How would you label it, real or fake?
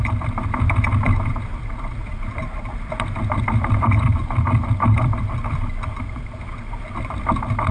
fake